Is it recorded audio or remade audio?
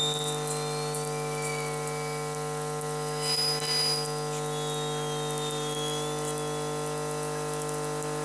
recorded